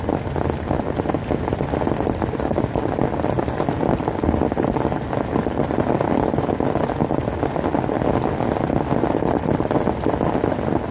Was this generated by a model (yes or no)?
no